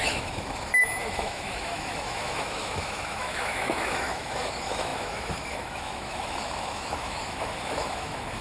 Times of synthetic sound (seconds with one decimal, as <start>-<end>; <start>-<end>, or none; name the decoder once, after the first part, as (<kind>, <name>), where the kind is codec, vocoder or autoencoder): 0.0-8.4 (autoencoder, DAC-VAE)